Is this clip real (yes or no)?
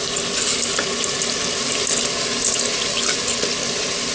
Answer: yes